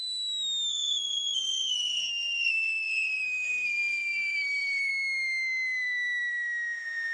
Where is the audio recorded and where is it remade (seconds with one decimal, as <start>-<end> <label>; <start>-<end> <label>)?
0.0-0.7 recorded; 0.7-4.9 remade; 4.9-7.1 recorded